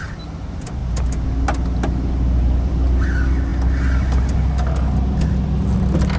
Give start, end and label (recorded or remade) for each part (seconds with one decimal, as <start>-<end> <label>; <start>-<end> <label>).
0.0-6.2 recorded

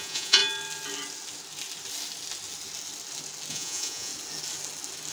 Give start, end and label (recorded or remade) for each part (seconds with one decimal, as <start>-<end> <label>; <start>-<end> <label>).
0.0-0.4 remade; 0.4-3.5 recorded; 3.5-4.1 remade; 4.1-5.1 recorded

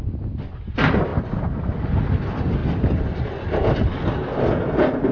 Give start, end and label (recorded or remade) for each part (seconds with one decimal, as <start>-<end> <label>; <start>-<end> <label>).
0.0-5.1 recorded

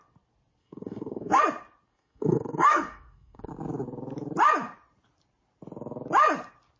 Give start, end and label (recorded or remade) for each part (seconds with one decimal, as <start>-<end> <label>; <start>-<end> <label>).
0.0-0.6 recorded; 0.6-1.4 remade; 1.4-1.9 recorded; 1.9-3.5 remade; 3.5-6.8 recorded

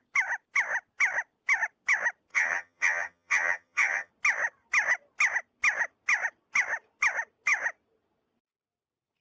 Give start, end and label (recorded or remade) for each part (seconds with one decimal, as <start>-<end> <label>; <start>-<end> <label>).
0.0-2.3 recorded; 2.3-4.1 remade; 4.1-9.2 recorded